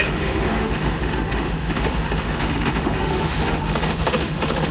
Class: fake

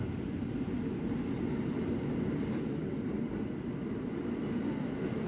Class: real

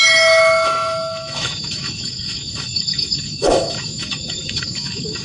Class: fake